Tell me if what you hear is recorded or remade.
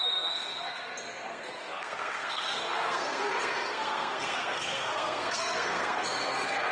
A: remade